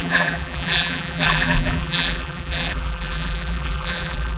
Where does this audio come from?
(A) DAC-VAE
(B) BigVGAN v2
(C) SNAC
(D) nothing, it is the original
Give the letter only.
B